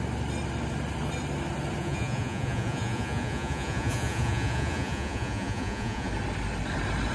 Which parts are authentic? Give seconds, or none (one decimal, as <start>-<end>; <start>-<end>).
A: 0.0-1.8; 6.1-7.1